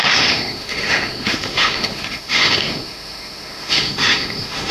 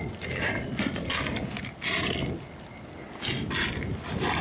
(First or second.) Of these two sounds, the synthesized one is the first